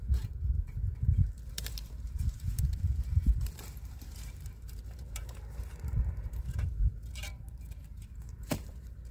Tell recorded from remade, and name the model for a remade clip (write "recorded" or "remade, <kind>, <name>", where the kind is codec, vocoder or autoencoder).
remade, vocoder, BigVGAN v2